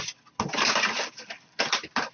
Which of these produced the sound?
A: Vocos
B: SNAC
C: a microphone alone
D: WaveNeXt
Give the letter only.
C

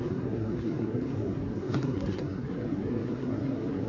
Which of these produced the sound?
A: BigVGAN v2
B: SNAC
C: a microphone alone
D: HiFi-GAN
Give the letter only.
B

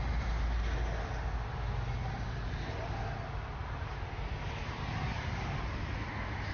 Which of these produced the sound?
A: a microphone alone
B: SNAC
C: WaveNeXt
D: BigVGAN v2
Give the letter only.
A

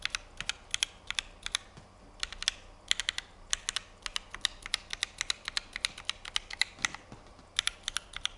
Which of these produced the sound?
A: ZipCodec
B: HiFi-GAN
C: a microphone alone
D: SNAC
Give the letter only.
C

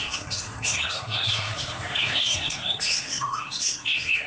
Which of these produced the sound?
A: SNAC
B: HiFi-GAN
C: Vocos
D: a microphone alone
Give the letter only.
A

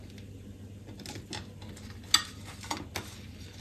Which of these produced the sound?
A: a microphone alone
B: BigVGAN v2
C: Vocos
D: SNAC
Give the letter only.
A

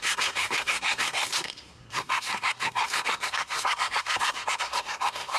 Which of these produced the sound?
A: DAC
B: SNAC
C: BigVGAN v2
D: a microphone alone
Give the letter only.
B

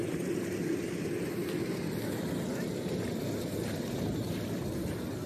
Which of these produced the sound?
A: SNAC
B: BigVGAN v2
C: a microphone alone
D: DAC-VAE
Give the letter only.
C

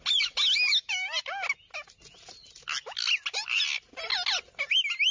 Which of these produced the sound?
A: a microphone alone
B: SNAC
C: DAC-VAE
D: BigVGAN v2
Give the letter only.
A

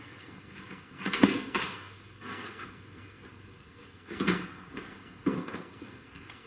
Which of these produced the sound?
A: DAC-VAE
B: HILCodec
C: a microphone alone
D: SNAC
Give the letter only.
D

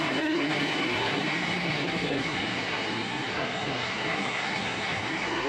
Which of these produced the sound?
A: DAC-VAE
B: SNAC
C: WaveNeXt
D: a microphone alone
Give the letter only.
B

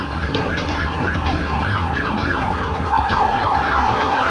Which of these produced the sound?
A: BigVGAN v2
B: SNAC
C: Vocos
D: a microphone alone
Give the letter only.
B